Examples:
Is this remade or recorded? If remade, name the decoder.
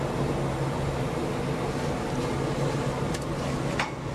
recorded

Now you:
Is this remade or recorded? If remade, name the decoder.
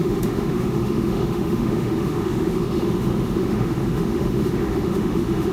remade, autoencoder, DAC-VAE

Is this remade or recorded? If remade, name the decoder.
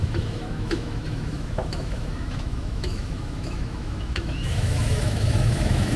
remade, autoencoder, DAC-VAE